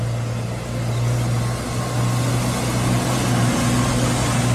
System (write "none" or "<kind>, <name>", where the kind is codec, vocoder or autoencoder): none